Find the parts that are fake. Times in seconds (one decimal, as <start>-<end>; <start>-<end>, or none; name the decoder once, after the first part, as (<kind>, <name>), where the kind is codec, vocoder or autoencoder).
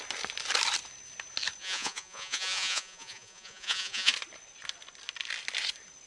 1.6-4.1 (vocoder, Vocos)